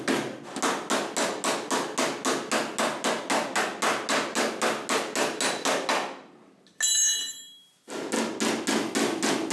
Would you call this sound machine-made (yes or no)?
no